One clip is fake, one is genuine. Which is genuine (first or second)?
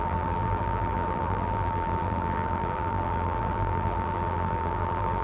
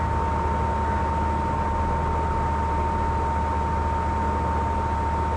second